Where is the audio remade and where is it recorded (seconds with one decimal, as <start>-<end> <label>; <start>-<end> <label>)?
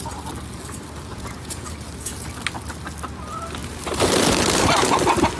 0.0-1.1 recorded; 1.1-1.7 remade; 1.7-5.4 recorded